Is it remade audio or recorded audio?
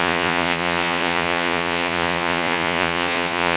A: remade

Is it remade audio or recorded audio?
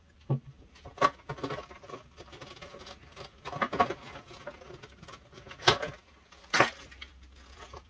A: recorded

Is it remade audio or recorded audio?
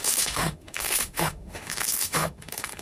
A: remade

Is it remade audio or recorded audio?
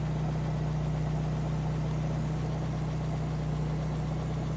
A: recorded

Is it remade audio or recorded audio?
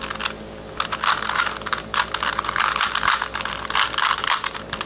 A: recorded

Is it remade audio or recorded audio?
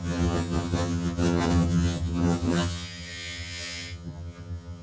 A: remade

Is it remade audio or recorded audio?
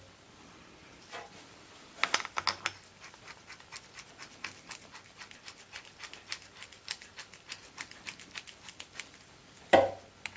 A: recorded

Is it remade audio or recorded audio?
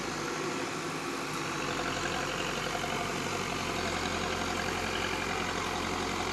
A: recorded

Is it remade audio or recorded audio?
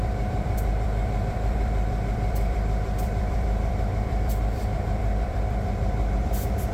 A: remade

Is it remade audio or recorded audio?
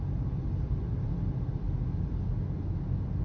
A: recorded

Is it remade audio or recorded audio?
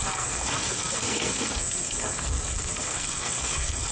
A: remade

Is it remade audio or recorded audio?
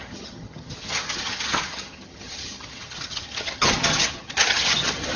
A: remade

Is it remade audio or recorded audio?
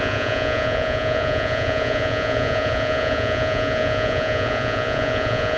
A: remade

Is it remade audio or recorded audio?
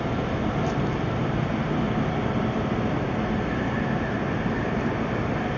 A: recorded